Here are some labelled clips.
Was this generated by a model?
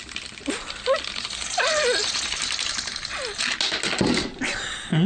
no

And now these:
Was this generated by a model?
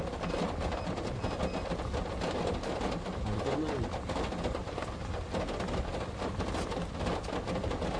no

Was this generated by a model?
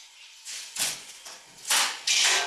yes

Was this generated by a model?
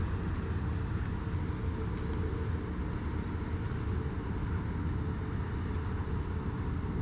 no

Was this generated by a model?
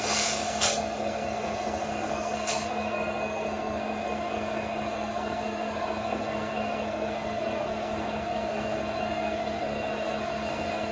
yes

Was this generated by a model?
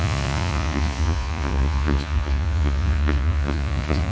yes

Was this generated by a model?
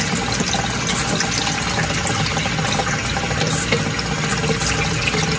no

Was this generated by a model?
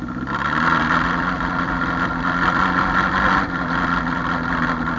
no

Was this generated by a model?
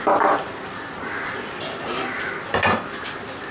no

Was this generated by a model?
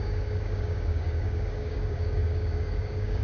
yes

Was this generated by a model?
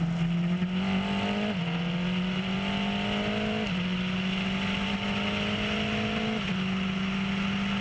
no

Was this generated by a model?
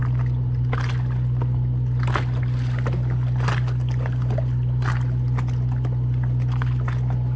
no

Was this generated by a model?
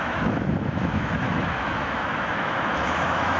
yes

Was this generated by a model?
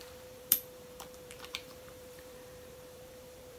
yes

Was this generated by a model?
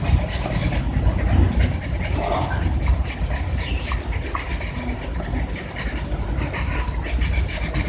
no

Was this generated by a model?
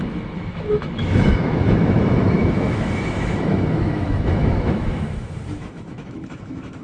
yes